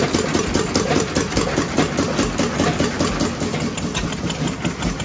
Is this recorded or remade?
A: recorded